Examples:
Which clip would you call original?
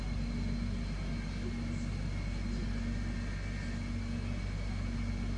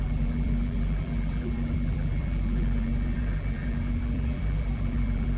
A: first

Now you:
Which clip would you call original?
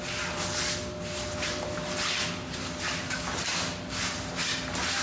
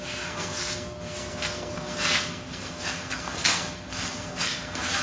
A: first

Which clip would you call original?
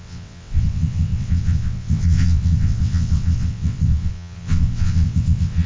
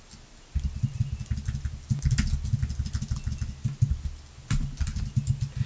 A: second